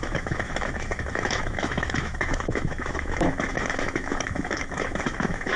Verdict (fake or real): fake